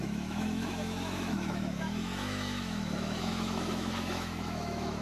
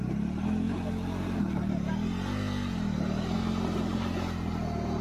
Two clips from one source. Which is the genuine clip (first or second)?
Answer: second